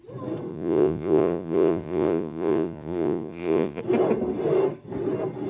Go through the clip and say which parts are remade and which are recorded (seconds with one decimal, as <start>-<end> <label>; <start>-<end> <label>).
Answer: 0.0-0.5 recorded; 0.5-3.8 remade; 3.8-5.5 recorded

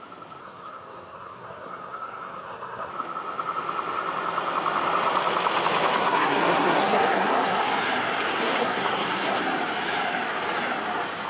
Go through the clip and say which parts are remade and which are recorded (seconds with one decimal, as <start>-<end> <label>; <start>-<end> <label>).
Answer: 0.0-0.4 recorded; 0.4-2.9 remade; 2.9-6.0 recorded; 6.0-7.7 remade; 7.7-8.3 recorded; 8.3-9.4 remade; 9.4-11.3 recorded

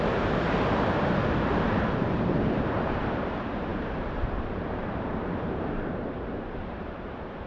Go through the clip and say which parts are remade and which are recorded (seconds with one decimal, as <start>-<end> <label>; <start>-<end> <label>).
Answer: 0.0-7.5 remade

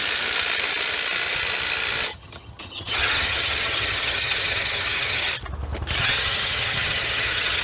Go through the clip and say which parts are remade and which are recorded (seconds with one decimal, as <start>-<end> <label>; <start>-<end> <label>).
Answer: 0.0-2.1 recorded; 2.1-5.3 remade; 5.3-6.0 recorded; 6.0-7.6 remade

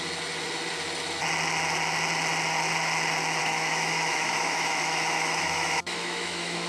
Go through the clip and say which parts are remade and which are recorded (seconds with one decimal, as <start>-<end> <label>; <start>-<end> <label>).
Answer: 0.0-3.4 recorded; 3.4-6.7 remade

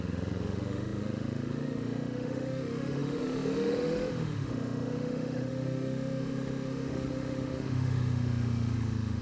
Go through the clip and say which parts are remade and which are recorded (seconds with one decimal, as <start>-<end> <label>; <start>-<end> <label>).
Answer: 0.0-9.2 remade

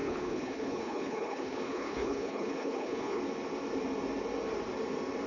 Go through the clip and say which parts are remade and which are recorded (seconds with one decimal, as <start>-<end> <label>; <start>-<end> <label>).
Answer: 0.0-3.2 remade; 3.2-5.3 recorded